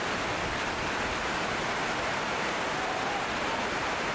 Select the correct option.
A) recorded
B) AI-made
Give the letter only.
A